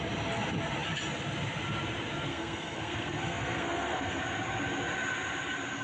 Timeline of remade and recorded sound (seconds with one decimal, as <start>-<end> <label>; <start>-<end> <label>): 0.0-2.3 recorded; 2.3-4.2 remade; 4.2-5.8 recorded